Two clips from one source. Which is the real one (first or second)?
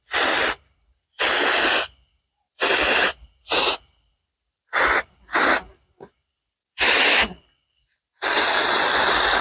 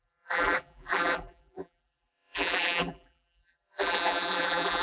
first